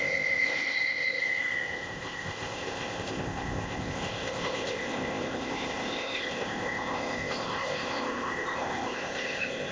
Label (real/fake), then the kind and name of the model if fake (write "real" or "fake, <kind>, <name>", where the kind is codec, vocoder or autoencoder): fake, codec, ZipCodec